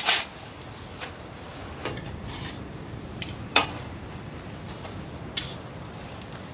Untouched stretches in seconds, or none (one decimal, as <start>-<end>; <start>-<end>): 0.0-1.5; 3.6-6.5

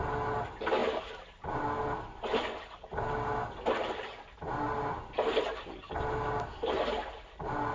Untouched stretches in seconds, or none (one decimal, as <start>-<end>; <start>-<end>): 0.0-7.7

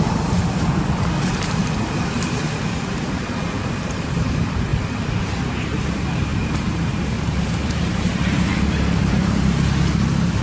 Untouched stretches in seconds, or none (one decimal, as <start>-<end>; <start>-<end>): 4.7-5.2; 8.5-9.0

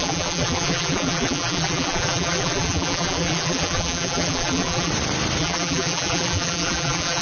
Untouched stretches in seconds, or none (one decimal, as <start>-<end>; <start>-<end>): 4.9-5.4

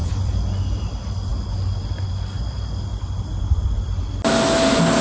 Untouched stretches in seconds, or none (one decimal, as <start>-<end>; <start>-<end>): 0.6-2.9; 3.6-5.0

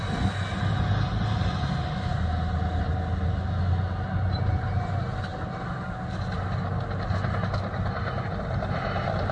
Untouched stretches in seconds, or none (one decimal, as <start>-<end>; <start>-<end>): 0.0-9.3

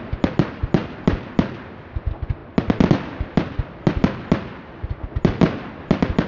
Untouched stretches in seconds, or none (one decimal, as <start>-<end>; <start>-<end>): 0.0-6.3

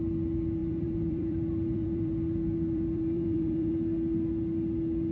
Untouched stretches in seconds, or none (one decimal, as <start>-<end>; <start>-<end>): 0.0-0.6; 3.7-5.1